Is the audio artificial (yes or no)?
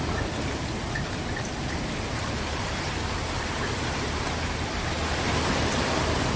no